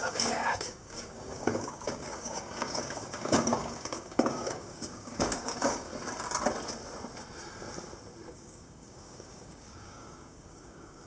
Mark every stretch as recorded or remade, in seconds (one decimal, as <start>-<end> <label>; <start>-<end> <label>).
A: 0.0-5.9 remade; 5.9-8.3 recorded; 8.3-11.1 remade